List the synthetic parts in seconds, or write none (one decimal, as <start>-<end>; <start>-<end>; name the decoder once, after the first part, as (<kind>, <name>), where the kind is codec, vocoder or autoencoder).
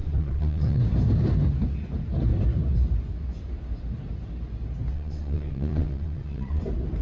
0.0-0.8 (vocoder, WaveNeXt); 4.9-6.6